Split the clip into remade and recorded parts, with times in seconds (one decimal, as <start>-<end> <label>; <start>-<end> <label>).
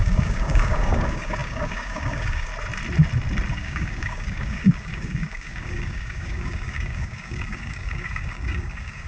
0.0-2.5 remade; 2.5-3.5 recorded; 3.5-9.1 remade